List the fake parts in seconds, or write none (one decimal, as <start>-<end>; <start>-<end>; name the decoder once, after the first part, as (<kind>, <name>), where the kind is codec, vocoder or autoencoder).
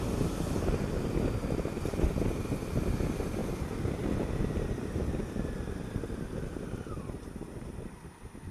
none